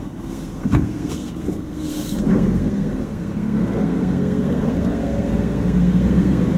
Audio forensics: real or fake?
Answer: fake